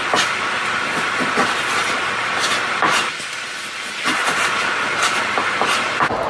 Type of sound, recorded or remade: recorded